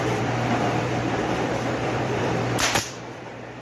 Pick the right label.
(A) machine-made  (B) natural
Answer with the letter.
A